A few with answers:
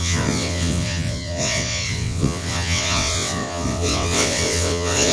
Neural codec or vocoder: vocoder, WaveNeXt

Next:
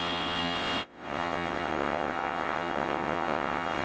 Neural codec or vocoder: vocoder, WaveNeXt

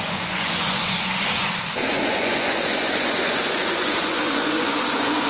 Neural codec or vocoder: vocoder, Vocos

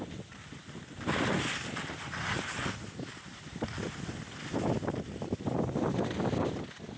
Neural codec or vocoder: none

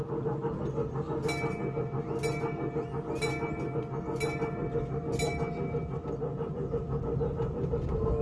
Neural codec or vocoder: none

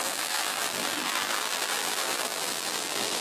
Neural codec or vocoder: vocoder, BigVGAN v2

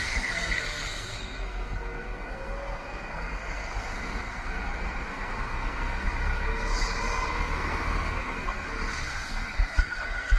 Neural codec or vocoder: codec, SNAC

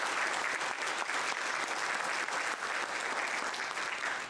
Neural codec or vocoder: none